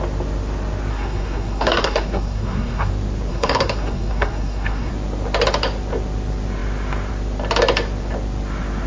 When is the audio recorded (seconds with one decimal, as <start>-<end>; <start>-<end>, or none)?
0.0-0.9; 2.9-3.3; 4.9-8.9